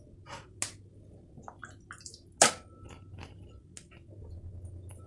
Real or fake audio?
real